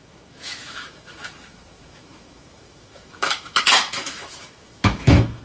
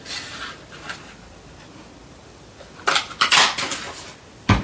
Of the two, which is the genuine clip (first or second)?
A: second